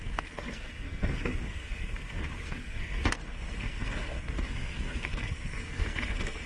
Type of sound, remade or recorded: remade